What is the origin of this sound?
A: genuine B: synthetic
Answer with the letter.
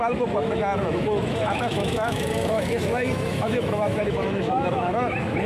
B